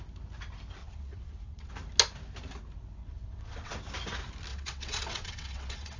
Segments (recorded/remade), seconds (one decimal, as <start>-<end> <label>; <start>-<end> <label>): 0.0-0.8 recorded; 0.8-1.7 remade; 1.7-3.0 recorded; 3.0-3.7 remade; 3.7-4.5 recorded; 4.5-6.0 remade